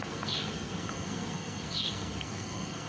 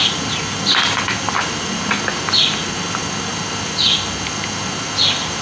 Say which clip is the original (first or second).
second